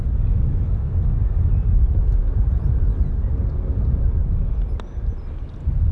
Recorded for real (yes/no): yes